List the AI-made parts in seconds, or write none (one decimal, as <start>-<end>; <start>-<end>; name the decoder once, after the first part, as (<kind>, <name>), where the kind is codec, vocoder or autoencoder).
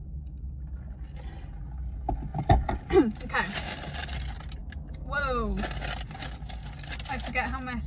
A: none